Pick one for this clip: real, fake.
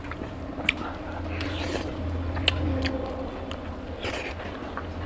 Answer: real